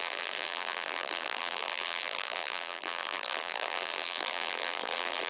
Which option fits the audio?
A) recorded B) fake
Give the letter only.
B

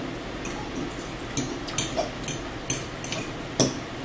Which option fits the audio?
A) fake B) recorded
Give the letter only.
B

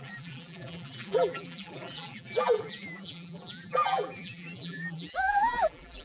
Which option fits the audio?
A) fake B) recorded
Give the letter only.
A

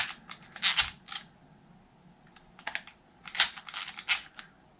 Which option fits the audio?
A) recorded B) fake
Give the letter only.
A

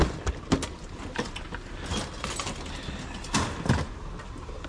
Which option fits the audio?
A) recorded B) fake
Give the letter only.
A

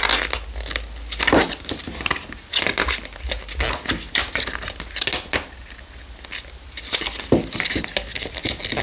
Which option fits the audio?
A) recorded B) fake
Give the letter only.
A